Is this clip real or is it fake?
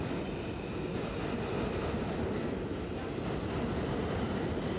real